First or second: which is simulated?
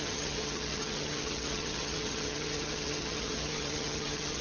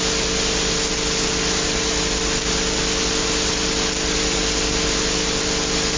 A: first